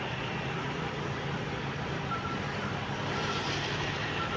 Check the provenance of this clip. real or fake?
fake